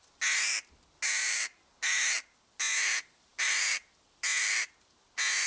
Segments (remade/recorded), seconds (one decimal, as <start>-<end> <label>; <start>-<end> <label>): 0.0-5.5 recorded